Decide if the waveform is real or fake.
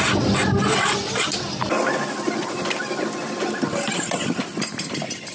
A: real